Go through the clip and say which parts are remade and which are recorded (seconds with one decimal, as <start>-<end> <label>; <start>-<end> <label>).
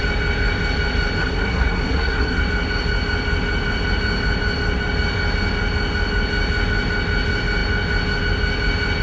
0.0-1.2 recorded; 1.2-2.4 remade; 2.4-9.0 recorded